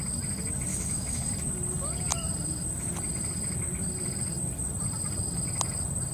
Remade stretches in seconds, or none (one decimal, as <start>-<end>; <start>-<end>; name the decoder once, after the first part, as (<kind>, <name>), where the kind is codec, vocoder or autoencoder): 0.7-1.3 (autoencoder, DAC-VAE)